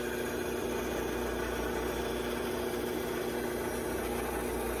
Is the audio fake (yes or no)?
no